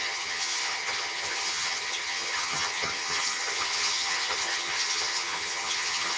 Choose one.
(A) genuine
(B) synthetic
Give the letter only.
B